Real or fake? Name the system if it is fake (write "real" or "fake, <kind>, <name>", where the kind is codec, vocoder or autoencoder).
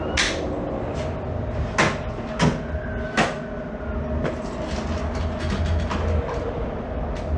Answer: real